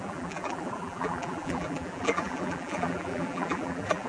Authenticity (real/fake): fake